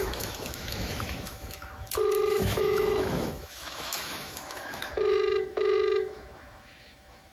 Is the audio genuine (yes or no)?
no